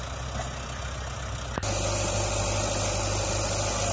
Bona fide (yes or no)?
yes